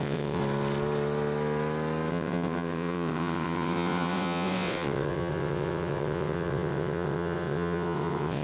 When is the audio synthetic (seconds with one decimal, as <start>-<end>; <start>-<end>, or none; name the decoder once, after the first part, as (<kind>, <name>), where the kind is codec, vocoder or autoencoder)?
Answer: 0.0-0.4 (vocoder, WaveNeXt); 2.1-8.4